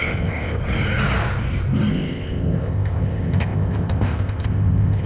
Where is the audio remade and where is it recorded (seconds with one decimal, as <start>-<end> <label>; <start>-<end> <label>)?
0.0-0.6 remade; 0.6-1.9 recorded; 1.9-5.1 remade